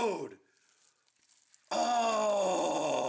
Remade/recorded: recorded